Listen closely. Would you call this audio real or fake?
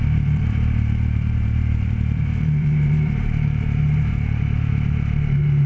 fake